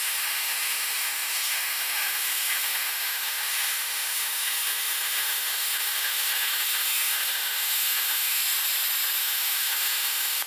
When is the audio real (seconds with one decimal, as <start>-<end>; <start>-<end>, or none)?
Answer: 8.4-9.2